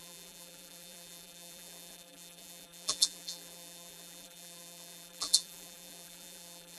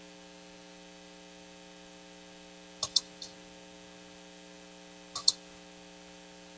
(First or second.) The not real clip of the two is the first